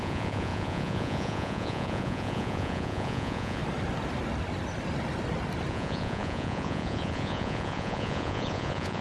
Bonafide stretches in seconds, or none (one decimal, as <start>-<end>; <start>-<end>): 3.6-5.7